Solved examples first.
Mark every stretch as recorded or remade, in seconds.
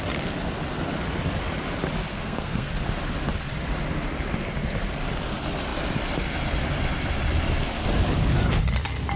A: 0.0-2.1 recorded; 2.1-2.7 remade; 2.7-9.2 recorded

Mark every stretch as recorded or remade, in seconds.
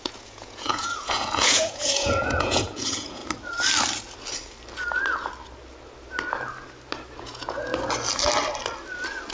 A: 0.0-3.2 remade; 3.2-7.2 recorded; 7.2-7.7 remade; 7.7-9.3 recorded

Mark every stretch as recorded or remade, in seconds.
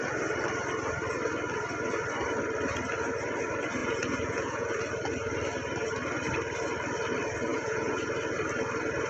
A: 0.0-3.8 recorded; 3.8-4.7 remade; 4.7-7.5 recorded; 7.5-8.1 remade; 8.1-9.1 recorded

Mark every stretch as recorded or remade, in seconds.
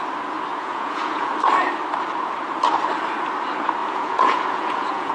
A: 0.0-0.5 recorded; 0.5-1.3 remade; 1.3-3.8 recorded; 3.8-5.1 remade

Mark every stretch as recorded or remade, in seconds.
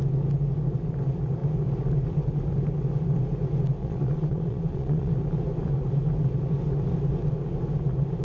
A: 0.0-3.8 recorded; 3.8-5.1 remade; 5.1-8.2 recorded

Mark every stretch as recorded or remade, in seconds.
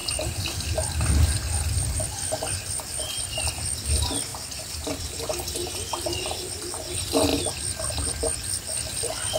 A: 0.0-9.4 remade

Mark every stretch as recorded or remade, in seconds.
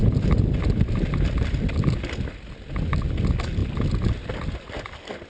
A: 0.0-5.3 recorded